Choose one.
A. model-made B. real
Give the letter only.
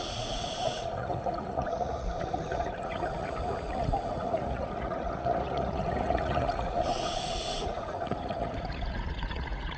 A